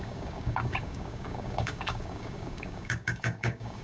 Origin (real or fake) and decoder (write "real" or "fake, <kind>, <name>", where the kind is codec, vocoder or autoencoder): fake, codec, DAC